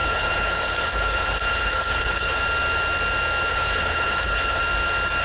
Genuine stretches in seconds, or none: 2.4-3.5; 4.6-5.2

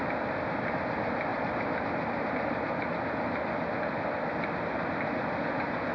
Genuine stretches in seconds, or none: 0.0-5.9

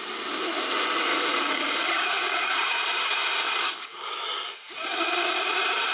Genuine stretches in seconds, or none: 0.0-1.1; 2.5-3.4; 4.7-5.9

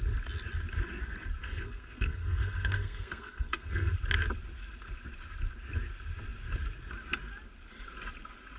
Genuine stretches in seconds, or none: 0.0-1.4; 3.9-8.6

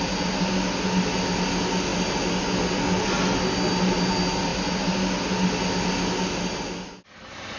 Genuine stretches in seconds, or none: 0.0-7.6

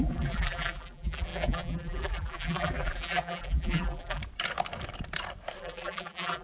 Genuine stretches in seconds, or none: 4.2-5.6